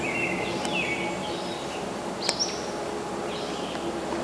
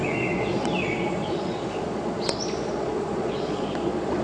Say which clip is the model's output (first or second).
second